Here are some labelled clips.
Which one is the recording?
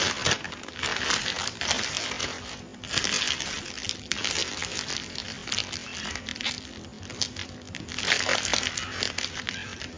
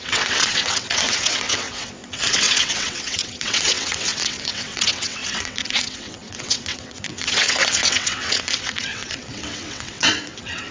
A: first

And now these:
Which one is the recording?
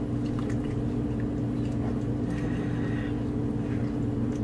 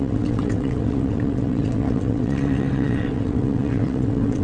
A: first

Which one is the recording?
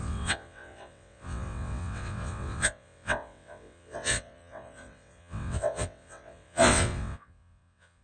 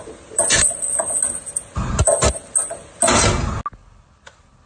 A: second